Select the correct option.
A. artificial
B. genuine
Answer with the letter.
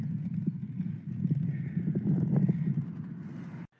B